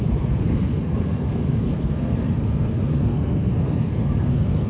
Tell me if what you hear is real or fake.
fake